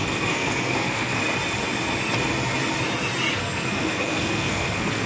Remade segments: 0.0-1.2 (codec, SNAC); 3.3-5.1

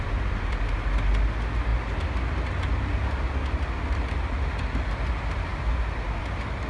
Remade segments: none

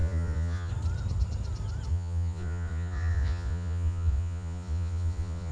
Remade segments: 0.0-0.7 (vocoder, Vocos); 1.9-5.5

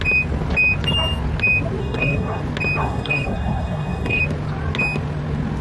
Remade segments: 1.8-2.4 (codec, SNAC); 2.8-4.2

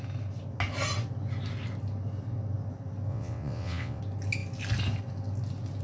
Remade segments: 3.1-4.0 (vocoder, WaveNeXt)

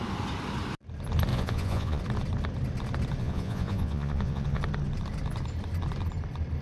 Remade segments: 1.3-2.0 (vocoder, Vocos); 3.2-4.6